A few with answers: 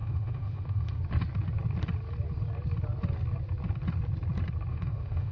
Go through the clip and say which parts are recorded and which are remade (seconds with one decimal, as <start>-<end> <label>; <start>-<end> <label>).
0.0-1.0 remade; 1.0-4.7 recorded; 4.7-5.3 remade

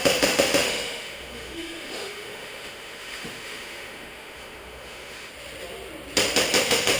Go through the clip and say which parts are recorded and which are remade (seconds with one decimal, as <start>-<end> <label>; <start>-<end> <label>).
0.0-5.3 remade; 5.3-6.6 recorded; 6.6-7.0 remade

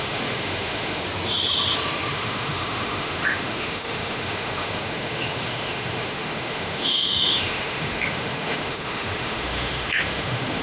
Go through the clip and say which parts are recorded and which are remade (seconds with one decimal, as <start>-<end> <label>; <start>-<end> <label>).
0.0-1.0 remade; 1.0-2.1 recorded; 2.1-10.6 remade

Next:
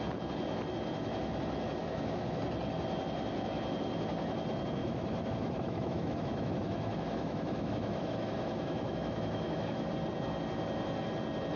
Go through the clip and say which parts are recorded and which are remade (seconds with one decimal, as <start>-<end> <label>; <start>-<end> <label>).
0.0-1.8 recorded; 1.8-2.4 remade; 2.4-4.8 recorded; 4.8-9.9 remade; 9.9-11.6 recorded